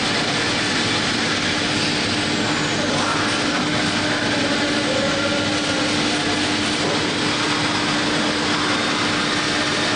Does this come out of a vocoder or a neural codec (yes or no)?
no